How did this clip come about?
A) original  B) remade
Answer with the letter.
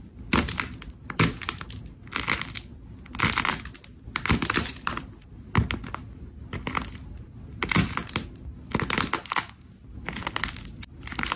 A